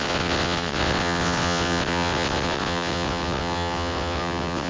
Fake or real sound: fake